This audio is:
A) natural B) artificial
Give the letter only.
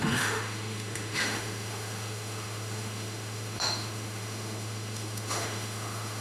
B